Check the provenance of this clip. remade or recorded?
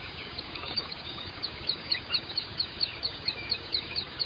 remade